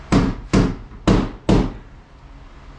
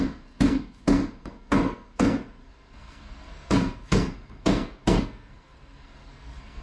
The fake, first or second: second